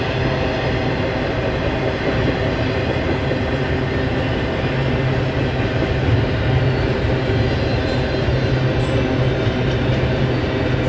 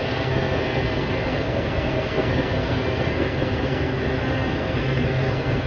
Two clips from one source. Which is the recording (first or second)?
first